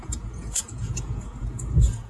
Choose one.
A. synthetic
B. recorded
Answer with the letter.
A